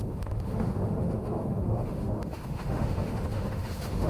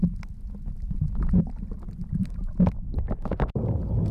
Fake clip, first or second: first